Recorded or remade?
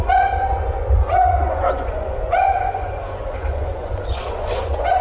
remade